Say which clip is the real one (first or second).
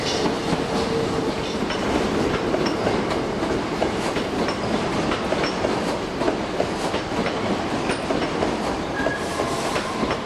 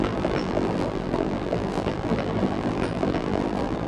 first